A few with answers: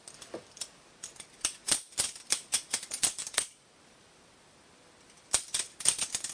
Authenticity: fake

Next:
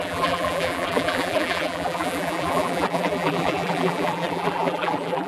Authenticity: fake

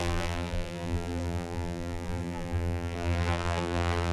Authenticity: fake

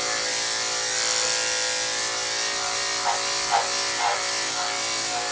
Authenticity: real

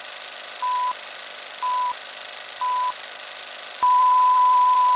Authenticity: fake